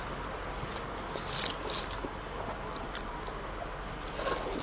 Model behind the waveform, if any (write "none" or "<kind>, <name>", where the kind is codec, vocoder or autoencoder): none